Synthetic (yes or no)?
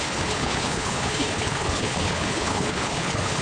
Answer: yes